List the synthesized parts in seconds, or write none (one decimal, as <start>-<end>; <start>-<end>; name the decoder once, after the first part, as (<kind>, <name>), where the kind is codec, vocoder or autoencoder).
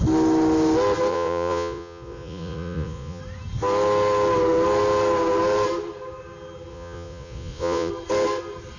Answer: 1.1-3.2 (vocoder, Vocos); 6.7-7.9